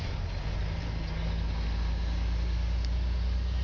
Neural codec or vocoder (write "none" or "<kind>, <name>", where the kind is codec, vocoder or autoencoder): none